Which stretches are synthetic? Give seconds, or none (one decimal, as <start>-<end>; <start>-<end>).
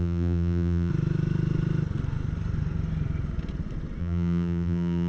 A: 0.0-0.9; 4.0-5.1